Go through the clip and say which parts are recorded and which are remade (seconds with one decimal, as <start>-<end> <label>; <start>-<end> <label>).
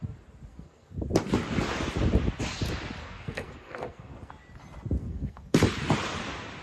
0.0-0.5 recorded; 0.5-1.0 remade; 1.0-3.0 recorded; 3.0-4.3 remade; 4.3-5.0 recorded; 5.0-5.6 remade; 5.6-6.6 recorded